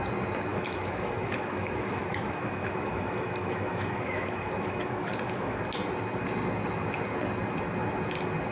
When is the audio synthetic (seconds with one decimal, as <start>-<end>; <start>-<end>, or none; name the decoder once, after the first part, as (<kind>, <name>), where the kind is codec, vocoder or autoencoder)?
0.5-5.6 (autoencoder, DAC-VAE)